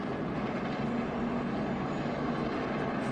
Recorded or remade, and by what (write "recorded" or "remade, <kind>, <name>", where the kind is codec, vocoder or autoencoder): recorded